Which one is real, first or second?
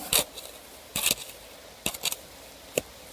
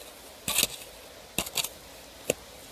second